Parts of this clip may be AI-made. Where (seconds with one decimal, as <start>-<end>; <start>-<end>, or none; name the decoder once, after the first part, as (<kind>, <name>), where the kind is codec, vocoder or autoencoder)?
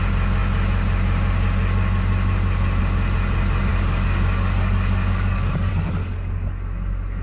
3.7-5.7 (codec, DAC)